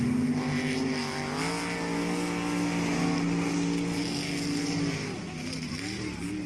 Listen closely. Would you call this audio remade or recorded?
recorded